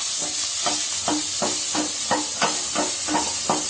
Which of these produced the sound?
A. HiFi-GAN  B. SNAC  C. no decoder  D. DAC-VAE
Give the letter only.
C